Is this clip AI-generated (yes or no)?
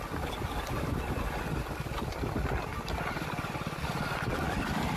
no